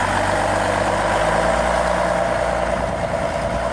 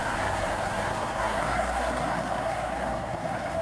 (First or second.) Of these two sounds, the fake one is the second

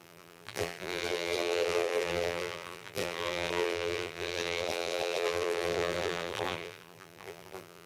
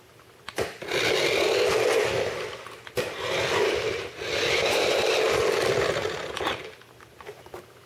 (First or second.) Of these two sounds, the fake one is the first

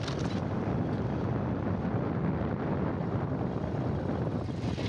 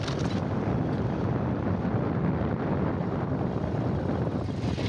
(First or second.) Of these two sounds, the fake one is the second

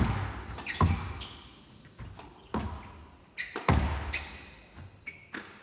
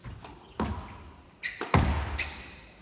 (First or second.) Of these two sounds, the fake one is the second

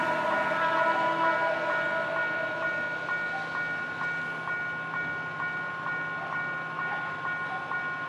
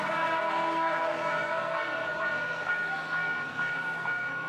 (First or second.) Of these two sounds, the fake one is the second